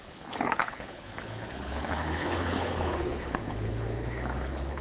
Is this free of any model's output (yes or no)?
no